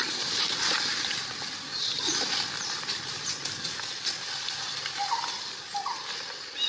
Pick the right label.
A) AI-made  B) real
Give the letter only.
B